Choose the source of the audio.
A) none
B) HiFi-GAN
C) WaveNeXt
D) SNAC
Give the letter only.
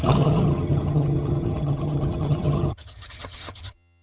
B